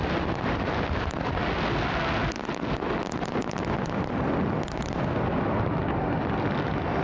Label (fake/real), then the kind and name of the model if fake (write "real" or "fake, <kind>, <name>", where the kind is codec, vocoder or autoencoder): real